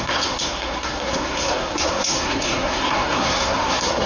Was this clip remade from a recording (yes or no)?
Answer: yes